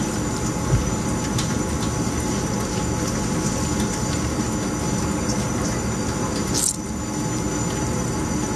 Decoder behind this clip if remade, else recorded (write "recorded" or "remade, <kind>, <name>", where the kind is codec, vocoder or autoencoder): recorded